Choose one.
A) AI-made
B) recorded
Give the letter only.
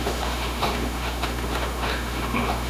A